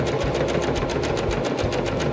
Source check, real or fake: real